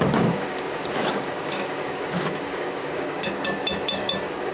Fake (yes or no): yes